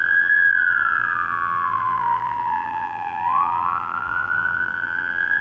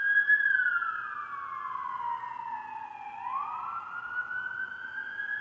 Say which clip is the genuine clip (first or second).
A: second